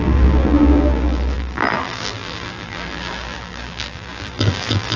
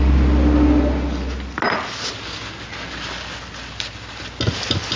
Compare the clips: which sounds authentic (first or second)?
second